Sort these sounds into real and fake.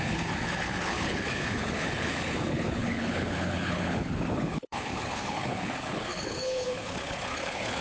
fake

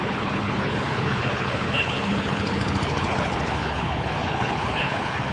fake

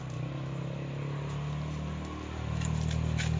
real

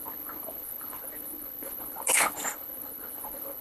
fake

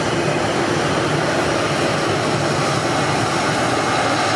real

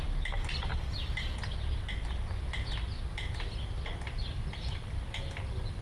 real